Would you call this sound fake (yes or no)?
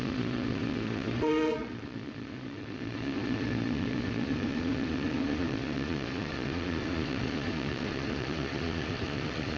yes